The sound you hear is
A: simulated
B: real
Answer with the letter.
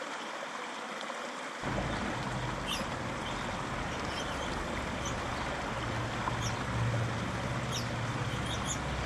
B